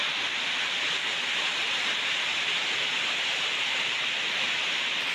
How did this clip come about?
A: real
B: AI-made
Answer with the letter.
A